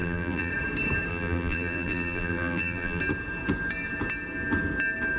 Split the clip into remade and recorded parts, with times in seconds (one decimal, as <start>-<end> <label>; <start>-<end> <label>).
0.0-0.5 remade; 0.5-1.1 recorded; 1.1-3.0 remade; 3.0-5.2 recorded